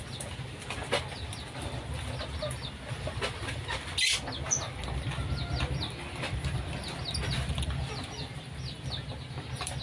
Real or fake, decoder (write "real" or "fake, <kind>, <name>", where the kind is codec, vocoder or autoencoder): real